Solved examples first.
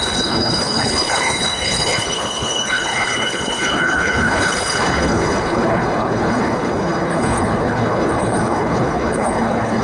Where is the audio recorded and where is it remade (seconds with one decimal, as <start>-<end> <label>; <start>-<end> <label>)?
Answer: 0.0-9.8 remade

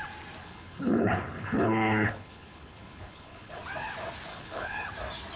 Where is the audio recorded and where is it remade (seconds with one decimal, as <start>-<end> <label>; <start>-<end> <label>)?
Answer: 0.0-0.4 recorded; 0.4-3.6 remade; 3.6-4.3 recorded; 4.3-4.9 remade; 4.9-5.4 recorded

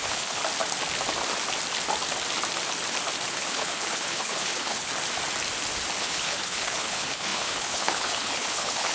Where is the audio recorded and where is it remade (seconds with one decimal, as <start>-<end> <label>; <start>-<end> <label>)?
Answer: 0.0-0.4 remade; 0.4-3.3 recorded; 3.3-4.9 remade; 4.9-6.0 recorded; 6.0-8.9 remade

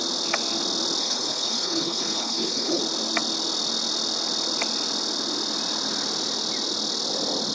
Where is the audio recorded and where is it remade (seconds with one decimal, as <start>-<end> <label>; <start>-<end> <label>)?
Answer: 0.0-1.0 recorded; 1.0-2.8 remade; 2.8-7.5 recorded

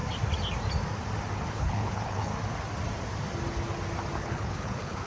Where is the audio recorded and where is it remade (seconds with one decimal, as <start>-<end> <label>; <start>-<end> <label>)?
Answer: 0.0-1.5 recorded; 1.5-2.3 remade; 2.3-4.2 recorded; 4.2-5.1 remade